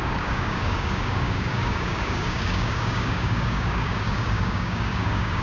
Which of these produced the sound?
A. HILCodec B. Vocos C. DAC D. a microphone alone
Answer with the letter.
C